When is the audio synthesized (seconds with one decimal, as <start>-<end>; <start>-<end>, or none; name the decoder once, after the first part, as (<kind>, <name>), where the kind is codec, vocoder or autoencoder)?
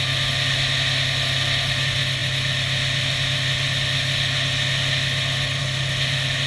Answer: none